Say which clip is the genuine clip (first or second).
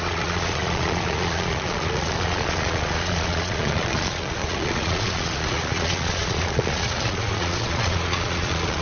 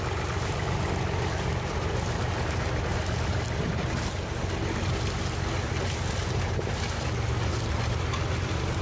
second